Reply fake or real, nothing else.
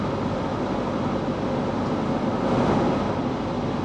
real